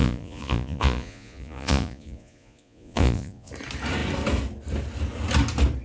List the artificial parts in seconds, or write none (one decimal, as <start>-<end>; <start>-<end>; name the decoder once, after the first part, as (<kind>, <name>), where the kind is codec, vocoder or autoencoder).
0.0-3.5 (vocoder, Vocos)